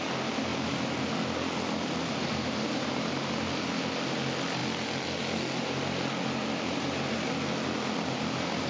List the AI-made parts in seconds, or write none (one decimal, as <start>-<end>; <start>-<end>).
none